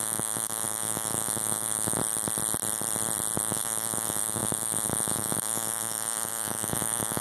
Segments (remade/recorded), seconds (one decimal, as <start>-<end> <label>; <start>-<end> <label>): 0.0-2.0 remade; 2.0-3.4 recorded; 3.4-7.2 remade